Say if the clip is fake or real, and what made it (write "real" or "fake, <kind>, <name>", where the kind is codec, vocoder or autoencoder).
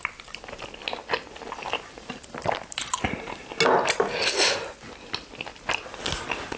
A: real